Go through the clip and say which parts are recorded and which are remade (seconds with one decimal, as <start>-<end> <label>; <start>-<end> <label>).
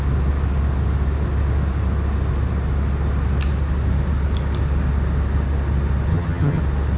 0.0-6.1 recorded; 6.1-6.6 remade; 6.6-7.0 recorded